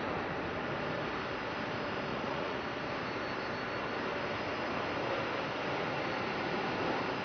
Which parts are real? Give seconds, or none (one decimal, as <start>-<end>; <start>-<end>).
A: 0.0-2.1; 2.6-7.2